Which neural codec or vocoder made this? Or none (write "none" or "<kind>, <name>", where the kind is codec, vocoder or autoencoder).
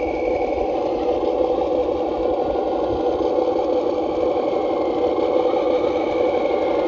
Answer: none